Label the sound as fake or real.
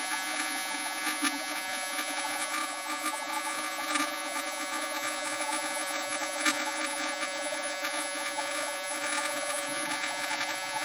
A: fake